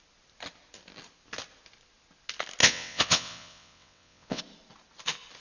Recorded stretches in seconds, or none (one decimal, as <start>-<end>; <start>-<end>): 0.0-2.6; 4.4-5.4